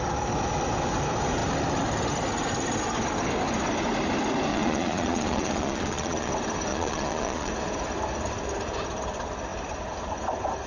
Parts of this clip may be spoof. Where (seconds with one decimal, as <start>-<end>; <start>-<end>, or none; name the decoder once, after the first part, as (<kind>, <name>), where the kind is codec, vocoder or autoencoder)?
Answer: 4.5-6.3 (vocoder, Vocos); 6.7-7.5

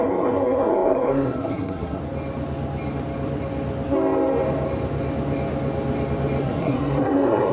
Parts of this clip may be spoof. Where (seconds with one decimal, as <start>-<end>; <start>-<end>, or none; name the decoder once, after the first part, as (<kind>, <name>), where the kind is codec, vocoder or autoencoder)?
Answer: 0.0-2.0 (codec, SNAC); 6.4-7.5